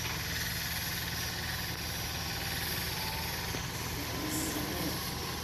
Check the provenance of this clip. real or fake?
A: real